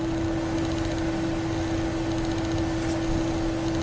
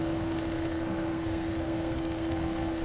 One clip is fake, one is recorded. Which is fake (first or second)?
second